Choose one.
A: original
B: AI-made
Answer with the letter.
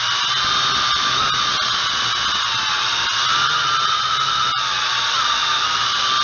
A